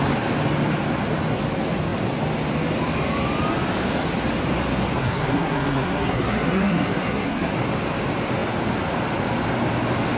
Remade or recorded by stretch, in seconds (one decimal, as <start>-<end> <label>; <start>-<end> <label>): 0.0-5.0 recorded; 5.0-7.5 remade; 7.5-10.2 recorded